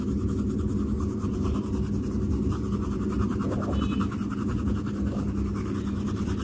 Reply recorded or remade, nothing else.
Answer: recorded